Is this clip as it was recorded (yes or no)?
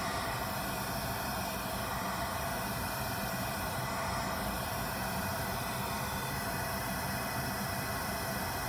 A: yes